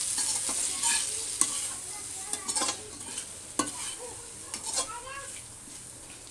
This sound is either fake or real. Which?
real